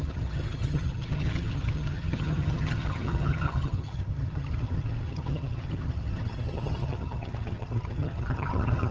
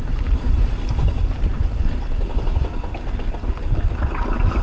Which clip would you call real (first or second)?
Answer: second